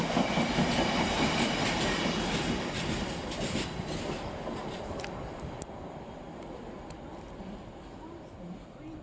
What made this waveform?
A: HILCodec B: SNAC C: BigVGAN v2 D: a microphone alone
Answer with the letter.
D